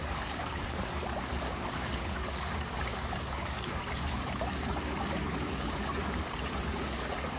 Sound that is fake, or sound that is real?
fake